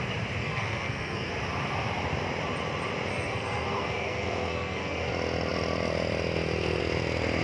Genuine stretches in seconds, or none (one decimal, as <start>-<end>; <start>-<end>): 0.0-0.4; 1.3-3.1; 5.1-7.4